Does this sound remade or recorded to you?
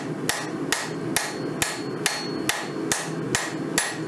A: recorded